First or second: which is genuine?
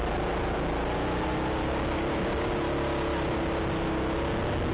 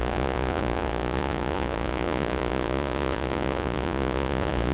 first